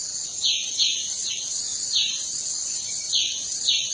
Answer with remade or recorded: recorded